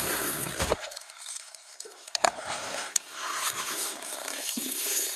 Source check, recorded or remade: remade